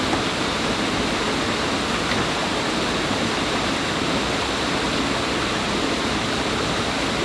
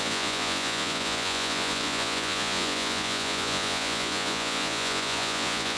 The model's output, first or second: second